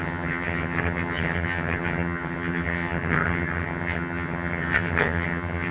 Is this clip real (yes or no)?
no